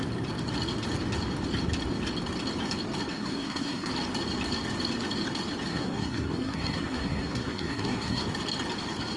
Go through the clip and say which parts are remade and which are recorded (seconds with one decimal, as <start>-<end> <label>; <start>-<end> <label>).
0.0-3.1 recorded; 3.1-3.9 remade; 3.9-5.7 recorded; 5.7-8.2 remade; 8.2-9.2 recorded